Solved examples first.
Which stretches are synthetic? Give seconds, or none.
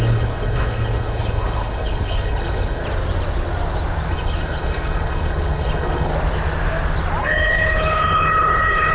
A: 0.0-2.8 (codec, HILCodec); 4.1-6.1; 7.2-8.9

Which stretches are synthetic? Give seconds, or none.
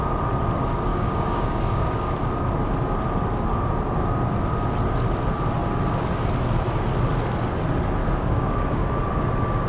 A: 0.9-2.1 (codec, DAC); 8.0-9.0